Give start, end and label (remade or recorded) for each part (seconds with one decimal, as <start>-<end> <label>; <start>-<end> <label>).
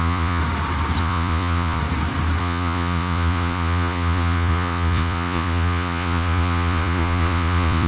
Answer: 0.0-0.4 remade; 0.4-1.0 recorded; 1.0-1.8 remade; 1.8-2.4 recorded; 2.4-7.9 remade